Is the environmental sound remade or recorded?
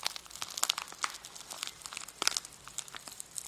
recorded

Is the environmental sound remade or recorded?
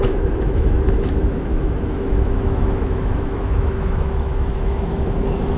remade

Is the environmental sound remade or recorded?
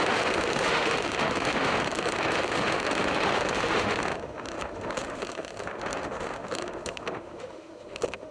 remade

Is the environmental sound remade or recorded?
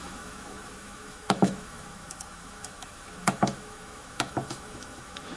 remade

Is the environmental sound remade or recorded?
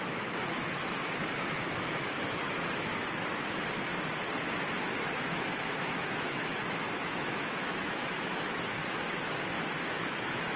remade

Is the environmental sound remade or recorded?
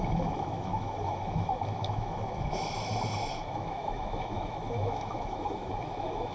remade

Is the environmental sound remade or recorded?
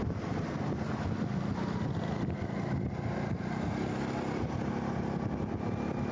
recorded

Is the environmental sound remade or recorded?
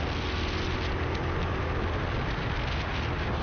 recorded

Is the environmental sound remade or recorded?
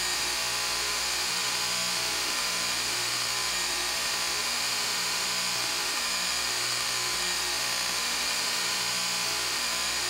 remade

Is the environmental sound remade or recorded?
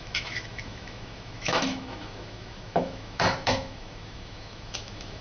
remade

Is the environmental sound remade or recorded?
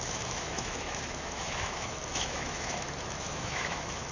remade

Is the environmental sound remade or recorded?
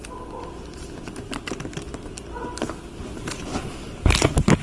recorded